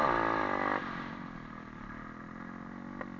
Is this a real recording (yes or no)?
yes